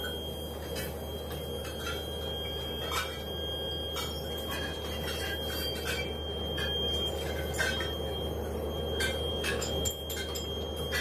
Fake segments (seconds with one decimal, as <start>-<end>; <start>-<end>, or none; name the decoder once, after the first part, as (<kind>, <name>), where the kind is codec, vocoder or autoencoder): 9.3-10.0 (codec, DAC)